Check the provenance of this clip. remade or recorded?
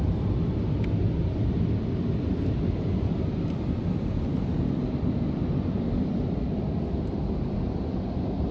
remade